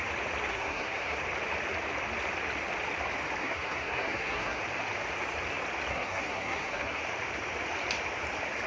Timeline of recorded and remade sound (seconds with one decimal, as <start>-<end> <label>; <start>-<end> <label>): 0.0-0.5 recorded; 0.5-1.2 remade; 1.2-3.4 recorded; 3.4-4.6 remade; 4.6-5.9 recorded; 5.9-7.0 remade; 7.0-8.7 recorded